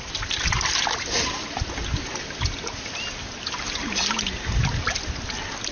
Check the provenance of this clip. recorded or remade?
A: recorded